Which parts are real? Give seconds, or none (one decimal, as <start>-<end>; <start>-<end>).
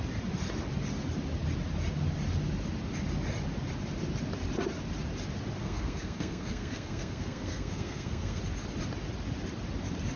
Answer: 0.0-5.6; 8.4-10.2